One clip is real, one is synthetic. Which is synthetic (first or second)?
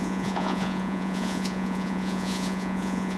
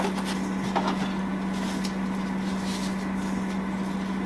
first